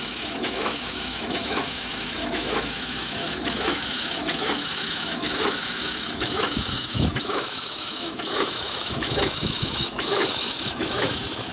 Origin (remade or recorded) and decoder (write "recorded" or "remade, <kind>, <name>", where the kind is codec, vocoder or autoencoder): remade, autoencoder, DAC-VAE